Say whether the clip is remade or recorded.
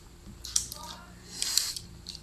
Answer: recorded